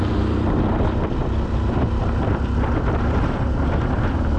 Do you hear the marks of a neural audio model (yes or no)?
yes